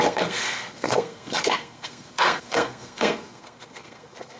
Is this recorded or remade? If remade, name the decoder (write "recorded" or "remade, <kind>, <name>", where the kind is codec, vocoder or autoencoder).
remade, codec, SNAC